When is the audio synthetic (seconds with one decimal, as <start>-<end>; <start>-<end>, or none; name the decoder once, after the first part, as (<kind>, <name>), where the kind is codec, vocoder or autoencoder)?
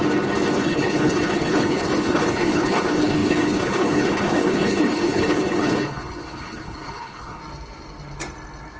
0.6-7.4 (codec, HILCodec)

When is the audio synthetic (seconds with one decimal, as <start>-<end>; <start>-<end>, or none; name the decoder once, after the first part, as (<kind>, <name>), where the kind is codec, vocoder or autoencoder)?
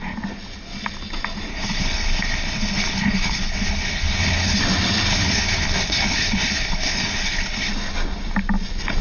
1.5-4.6 (codec, HILCodec); 5.1-7.7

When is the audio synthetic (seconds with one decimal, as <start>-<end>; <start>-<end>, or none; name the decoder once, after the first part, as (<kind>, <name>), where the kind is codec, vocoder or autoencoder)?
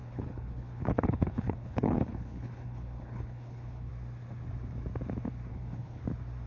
0.0-3.9 (codec, HILCodec); 5.5-6.0